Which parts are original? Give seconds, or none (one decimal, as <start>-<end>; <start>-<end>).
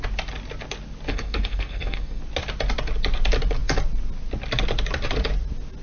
0.0-1.1; 2.2-5.8